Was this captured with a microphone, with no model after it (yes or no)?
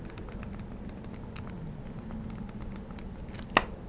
yes